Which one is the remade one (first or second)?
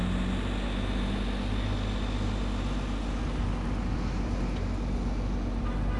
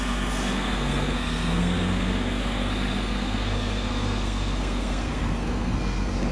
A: second